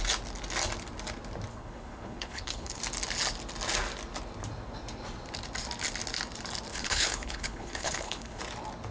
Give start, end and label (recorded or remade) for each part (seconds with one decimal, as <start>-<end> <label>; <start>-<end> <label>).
0.0-1.5 recorded; 1.5-2.8 remade; 2.8-6.7 recorded; 6.7-8.4 remade; 8.4-8.9 recorded

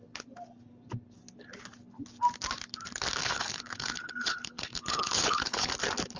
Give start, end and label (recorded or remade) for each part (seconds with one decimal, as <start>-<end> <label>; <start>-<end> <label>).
0.0-3.2 recorded; 3.2-5.7 remade; 5.7-6.2 recorded

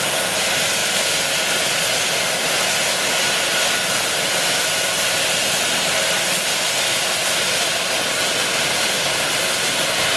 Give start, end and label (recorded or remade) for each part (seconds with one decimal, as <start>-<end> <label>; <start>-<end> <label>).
0.0-10.2 recorded

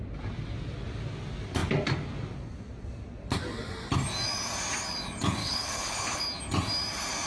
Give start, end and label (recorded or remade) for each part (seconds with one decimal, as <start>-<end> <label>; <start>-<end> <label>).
0.0-5.4 recorded; 5.4-6.2 remade; 6.2-7.3 recorded